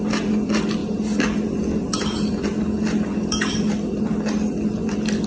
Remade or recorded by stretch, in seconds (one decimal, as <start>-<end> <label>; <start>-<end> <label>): 0.0-5.3 recorded

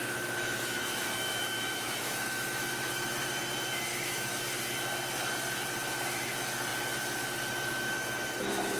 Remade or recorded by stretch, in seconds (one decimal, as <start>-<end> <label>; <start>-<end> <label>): 0.0-3.4 remade; 3.4-3.9 recorded; 3.9-4.4 remade; 4.4-8.8 recorded

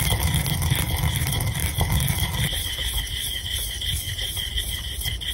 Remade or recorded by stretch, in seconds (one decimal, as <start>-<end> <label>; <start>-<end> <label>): 0.0-5.3 recorded

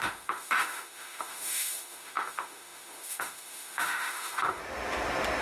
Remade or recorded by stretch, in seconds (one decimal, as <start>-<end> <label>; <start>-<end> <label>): 0.0-4.6 remade; 4.6-5.4 recorded

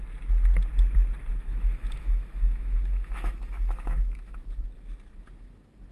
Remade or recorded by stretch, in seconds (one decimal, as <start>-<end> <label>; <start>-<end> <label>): 0.0-1.3 recorded; 1.3-4.6 remade; 4.6-5.9 recorded

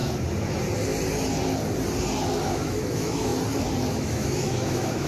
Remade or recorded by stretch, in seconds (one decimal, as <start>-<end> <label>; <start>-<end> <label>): 0.0-2.5 recorded; 2.5-3.3 remade; 3.3-3.9 recorded; 3.9-5.1 remade

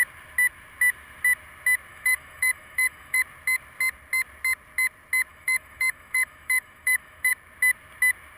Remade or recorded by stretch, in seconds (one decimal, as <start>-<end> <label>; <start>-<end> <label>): 0.0-1.9 recorded; 1.9-3.2 remade; 3.2-5.3 recorded; 5.3-7.3 remade; 7.3-8.4 recorded